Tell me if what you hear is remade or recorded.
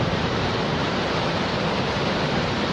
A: remade